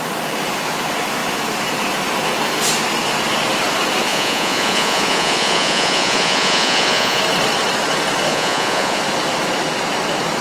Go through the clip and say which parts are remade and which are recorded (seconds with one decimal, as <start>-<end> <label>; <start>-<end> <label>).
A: 0.0-4.1 recorded; 4.1-7.2 remade; 7.2-8.3 recorded; 8.3-9.0 remade; 9.0-10.4 recorded